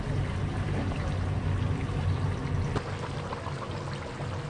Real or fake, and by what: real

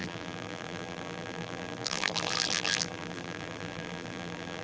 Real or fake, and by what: fake, vocoder, BigVGAN v2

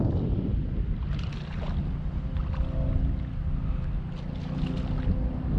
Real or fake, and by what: real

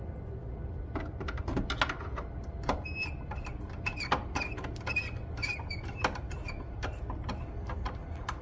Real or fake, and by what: real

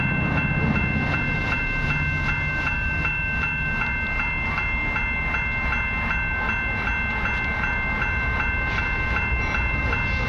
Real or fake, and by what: real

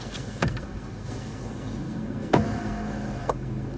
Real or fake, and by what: fake, codec, SNAC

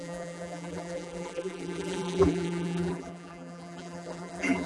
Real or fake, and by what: fake, vocoder, BigVGAN v2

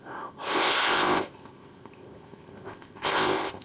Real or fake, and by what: fake, codec, ZipCodec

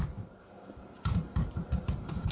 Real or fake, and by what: fake, vocoder, BigVGAN v2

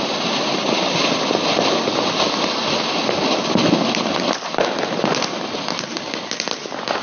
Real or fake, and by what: real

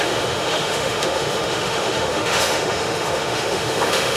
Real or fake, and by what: fake, autoencoder, DAC-VAE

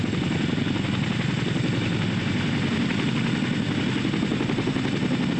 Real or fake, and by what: real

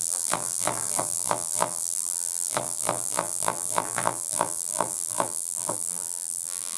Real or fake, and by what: fake, vocoder, BigVGAN v2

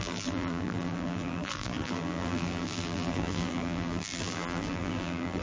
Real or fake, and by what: fake, vocoder, BigVGAN v2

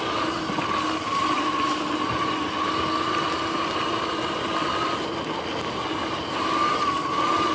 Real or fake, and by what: real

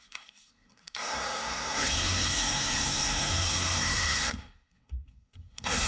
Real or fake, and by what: fake, codec, SNAC